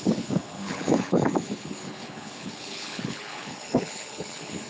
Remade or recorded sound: remade